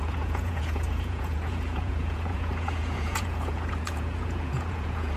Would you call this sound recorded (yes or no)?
no